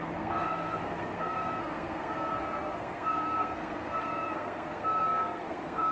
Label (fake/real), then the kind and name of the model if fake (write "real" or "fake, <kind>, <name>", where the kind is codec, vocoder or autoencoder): fake, codec, SNAC